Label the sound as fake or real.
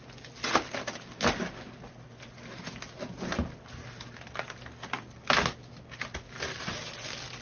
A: real